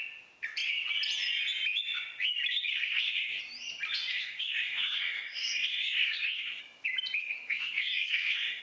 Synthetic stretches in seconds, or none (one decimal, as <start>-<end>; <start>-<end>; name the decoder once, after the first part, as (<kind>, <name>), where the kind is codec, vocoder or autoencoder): 2.7-3.4 (codec, SNAC); 4.1-6.6; 7.2-8.6